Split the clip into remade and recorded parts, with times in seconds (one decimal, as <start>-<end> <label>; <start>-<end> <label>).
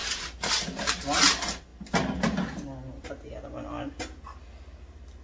0.0-5.2 recorded